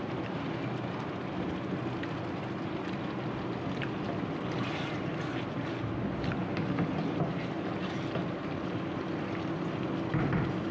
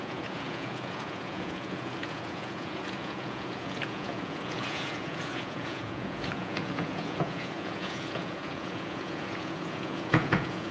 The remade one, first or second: second